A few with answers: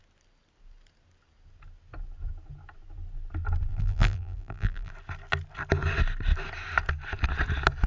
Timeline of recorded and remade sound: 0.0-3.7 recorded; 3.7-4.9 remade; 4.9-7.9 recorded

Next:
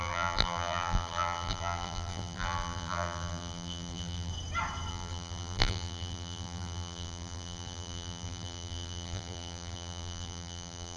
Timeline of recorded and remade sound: 0.0-4.3 remade; 4.3-4.9 recorded; 4.9-11.0 remade

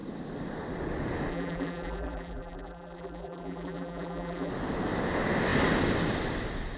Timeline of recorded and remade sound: 0.0-1.3 recorded; 1.3-4.5 remade; 4.5-6.8 recorded

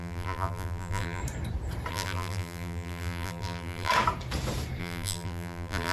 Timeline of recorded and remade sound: 0.0-1.2 remade; 1.2-1.9 recorded; 1.9-3.9 remade; 3.9-4.8 recorded; 4.8-5.9 remade

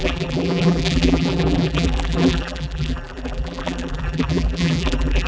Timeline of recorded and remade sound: 0.0-5.3 remade

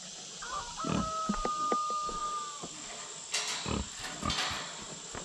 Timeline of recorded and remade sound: 0.0-0.4 recorded; 0.4-1.0 remade; 1.0-5.2 recorded